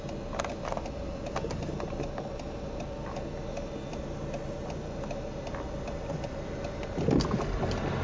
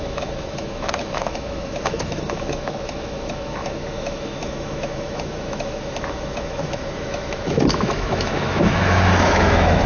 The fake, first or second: second